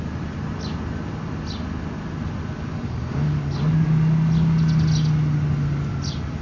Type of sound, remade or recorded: recorded